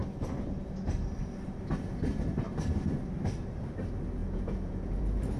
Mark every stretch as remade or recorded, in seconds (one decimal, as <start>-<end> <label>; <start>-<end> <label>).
0.0-4.2 recorded; 4.2-5.0 remade; 5.0-5.4 recorded